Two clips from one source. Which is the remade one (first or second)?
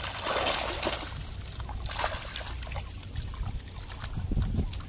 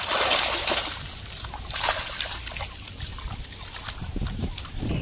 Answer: second